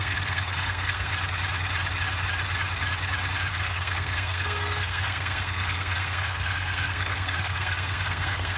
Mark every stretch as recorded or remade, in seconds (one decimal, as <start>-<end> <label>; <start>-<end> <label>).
0.0-1.1 remade; 1.1-3.5 recorded; 3.5-8.6 remade